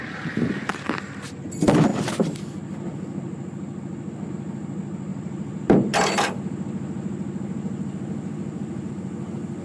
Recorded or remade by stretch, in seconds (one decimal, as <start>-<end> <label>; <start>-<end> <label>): 0.0-5.1 recorded; 5.1-8.9 remade; 8.9-9.6 recorded